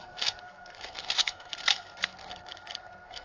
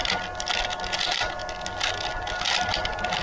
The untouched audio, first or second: second